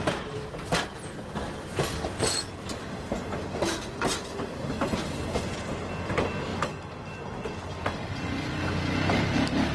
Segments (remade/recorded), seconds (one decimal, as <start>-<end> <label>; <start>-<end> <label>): 0.0-9.7 recorded